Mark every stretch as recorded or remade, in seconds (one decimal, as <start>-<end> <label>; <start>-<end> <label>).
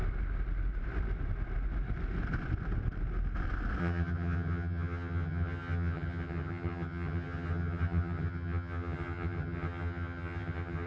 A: 0.0-3.8 recorded; 3.8-10.9 remade